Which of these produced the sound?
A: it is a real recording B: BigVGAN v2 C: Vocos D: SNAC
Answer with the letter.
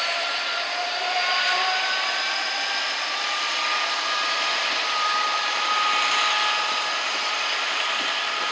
B